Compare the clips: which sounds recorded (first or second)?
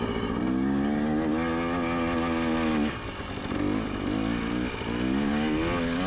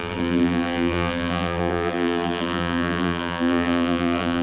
first